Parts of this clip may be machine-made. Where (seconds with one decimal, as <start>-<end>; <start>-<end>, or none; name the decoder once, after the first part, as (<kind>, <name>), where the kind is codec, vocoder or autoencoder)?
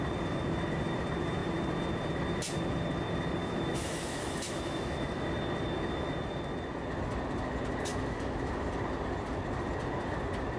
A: 3.4-5.3 (autoencoder, DAC-VAE); 7.9-8.7